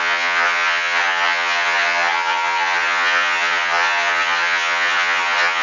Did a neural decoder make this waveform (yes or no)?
yes